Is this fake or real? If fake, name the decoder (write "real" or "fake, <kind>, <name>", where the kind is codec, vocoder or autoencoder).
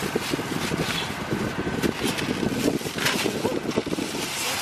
real